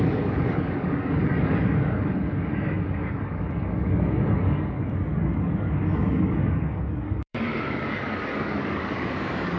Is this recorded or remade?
remade